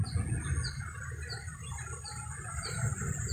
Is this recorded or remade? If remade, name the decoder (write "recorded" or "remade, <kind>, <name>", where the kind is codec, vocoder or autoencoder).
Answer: recorded